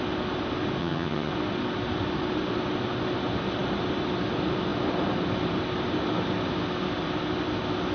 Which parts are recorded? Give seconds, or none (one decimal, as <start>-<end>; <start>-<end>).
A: 0.0-0.8; 1.3-7.9